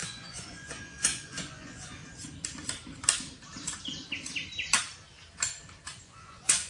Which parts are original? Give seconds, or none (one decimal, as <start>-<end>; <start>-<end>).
2.0-6.0